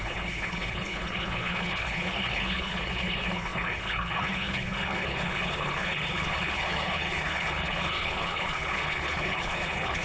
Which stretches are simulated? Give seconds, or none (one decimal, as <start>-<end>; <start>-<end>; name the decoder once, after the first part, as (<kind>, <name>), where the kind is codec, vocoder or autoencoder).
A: 0.0-10.0 (codec, HILCodec)